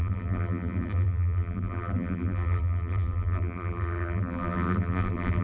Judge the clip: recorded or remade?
remade